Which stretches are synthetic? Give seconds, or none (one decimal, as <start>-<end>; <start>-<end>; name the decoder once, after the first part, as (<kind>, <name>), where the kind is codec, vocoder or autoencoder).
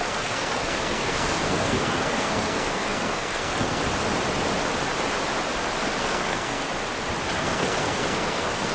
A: 0.0-3.8 (codec, SNAC); 6.0-6.7; 7.4-8.7